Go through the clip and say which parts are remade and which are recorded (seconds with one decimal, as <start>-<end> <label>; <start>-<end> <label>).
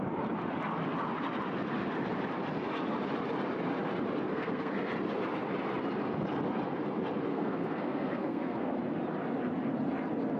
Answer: 0.0-4.3 recorded; 4.3-4.9 remade; 4.9-7.3 recorded; 7.3-8.7 remade; 8.7-10.4 recorded